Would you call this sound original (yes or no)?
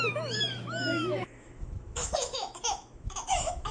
no